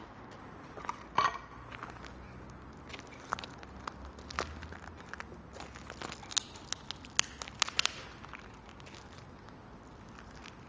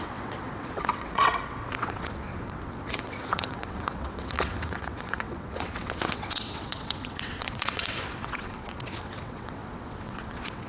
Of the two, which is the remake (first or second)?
second